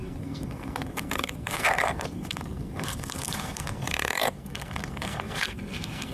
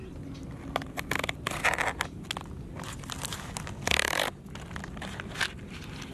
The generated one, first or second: first